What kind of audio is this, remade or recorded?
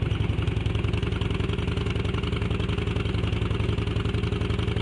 recorded